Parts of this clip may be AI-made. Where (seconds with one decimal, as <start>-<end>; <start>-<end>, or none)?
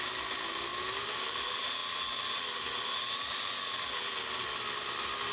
none